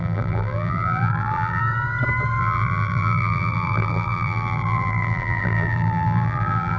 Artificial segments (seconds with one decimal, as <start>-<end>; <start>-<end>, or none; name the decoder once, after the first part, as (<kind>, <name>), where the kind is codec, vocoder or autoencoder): 0.0-1.6 (vocoder, BigVGAN v2); 2.4-6.8